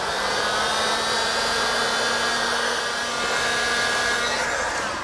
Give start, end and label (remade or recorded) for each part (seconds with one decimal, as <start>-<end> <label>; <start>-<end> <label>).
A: 0.0-2.3 recorded; 2.3-2.8 remade; 2.8-5.0 recorded